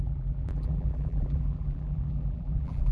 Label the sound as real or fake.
fake